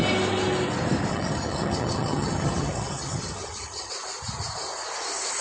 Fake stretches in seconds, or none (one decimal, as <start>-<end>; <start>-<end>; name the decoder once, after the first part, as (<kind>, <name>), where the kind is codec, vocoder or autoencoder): 1.1-3.9 (vocoder, HiFi-GAN)